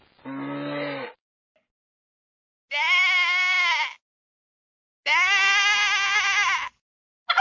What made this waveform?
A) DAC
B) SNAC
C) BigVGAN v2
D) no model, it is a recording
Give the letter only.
D